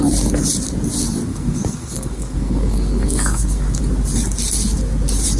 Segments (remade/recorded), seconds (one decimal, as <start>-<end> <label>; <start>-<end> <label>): 0.0-1.3 recorded; 1.3-3.8 remade; 3.8-5.4 recorded